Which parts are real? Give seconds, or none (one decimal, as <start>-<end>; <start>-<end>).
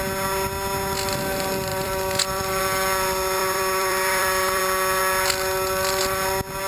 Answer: 0.0-1.7; 2.6-3.4; 4.6-6.7